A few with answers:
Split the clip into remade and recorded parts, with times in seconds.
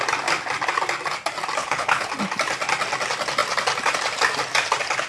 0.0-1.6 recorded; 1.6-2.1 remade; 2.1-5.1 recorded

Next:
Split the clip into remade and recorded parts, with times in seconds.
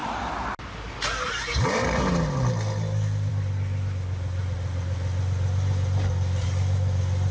0.0-7.3 recorded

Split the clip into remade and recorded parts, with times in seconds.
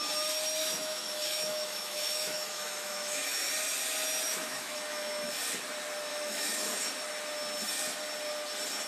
0.0-0.6 recorded; 0.6-3.5 remade; 3.5-4.3 recorded; 4.3-5.3 remade; 5.3-6.1 recorded; 6.1-6.8 remade; 6.8-8.9 recorded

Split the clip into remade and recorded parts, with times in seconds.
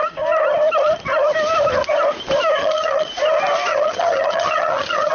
0.0-2.6 recorded; 2.6-3.1 remade; 3.1-3.7 recorded; 3.7-5.1 remade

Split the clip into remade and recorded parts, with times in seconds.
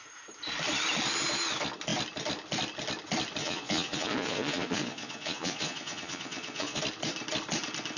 0.0-3.4 recorded; 3.4-6.8 remade; 6.8-8.0 recorded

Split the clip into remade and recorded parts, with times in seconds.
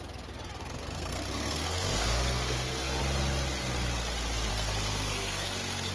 0.0-0.6 recorded; 0.6-3.0 remade; 3.0-4.5 recorded; 4.5-5.9 remade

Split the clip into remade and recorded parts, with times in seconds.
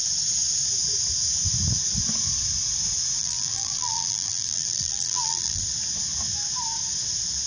0.0-3.2 recorded; 3.2-5.6 remade; 5.6-7.5 recorded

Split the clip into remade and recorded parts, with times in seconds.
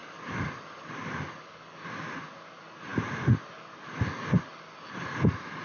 0.0-1.4 remade; 1.4-5.6 recorded